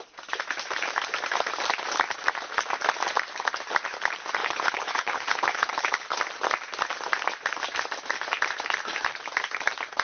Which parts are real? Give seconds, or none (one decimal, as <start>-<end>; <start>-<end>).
0.0-4.4; 6.2-10.0

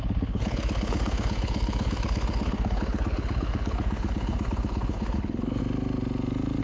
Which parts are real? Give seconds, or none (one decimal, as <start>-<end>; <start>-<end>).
5.6-6.6

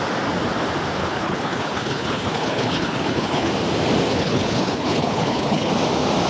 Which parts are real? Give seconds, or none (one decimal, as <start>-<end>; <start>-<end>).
0.0-1.0; 3.5-4.1; 5.7-6.3

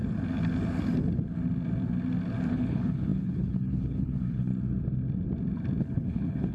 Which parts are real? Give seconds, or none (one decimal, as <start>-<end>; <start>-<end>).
0.0-2.5; 4.5-5.8

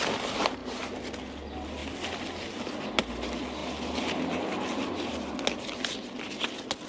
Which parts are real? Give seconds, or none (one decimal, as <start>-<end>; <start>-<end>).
0.0-6.9

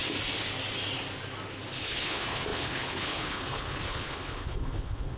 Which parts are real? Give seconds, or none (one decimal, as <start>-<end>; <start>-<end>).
0.0-1.7